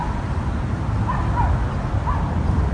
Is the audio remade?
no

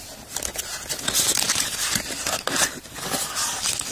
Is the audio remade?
no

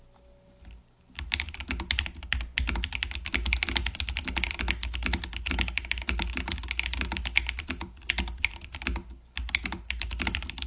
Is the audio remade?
no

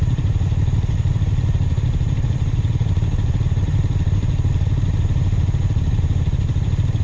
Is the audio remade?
yes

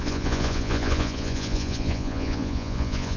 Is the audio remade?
yes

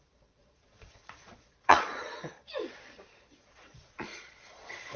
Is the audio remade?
yes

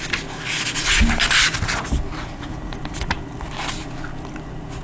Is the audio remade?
no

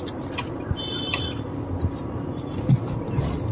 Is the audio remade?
yes